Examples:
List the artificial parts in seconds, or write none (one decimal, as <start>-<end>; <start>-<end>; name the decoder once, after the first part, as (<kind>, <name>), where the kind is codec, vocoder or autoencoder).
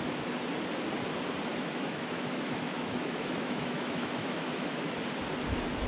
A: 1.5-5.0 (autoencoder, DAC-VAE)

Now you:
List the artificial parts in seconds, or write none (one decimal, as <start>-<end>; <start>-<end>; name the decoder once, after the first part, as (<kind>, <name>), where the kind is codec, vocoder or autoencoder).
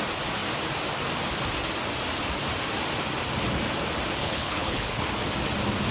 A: 4.2-5.1 (codec, HILCodec)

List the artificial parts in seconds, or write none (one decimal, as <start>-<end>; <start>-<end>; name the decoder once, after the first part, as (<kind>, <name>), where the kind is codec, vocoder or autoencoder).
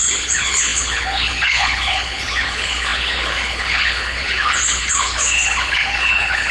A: 0.0-6.5 (codec, HILCodec)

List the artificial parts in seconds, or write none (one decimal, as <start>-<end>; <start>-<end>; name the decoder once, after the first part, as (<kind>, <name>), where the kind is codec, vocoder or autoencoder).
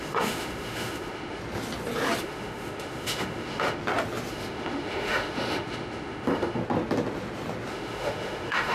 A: 0.0-1.4 (autoencoder, DAC-VAE); 2.2-3.8; 4.3-6.6; 7.7-8.7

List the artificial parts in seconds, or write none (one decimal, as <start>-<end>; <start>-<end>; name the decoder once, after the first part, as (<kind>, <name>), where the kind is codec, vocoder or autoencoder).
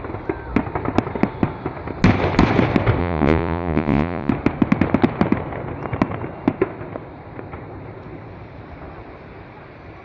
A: 3.0-4.3 (vocoder, Vocos)